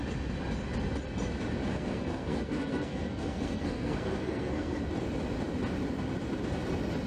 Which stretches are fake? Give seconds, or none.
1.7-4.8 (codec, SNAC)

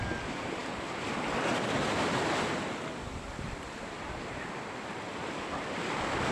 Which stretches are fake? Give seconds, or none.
none

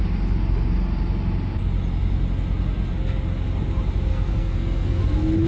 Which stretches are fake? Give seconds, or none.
4.1-5.0 (codec, SNAC)